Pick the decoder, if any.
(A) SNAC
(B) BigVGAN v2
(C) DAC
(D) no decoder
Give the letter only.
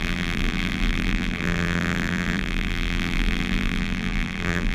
B